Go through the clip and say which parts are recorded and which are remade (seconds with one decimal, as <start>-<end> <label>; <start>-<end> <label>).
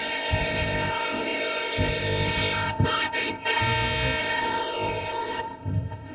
0.0-3.6 remade; 3.6-4.2 recorded; 4.2-6.1 remade